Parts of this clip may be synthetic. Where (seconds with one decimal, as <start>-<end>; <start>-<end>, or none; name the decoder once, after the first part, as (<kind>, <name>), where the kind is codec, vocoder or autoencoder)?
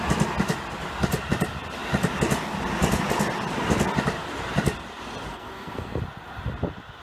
5.3-6.0 (codec, SNAC)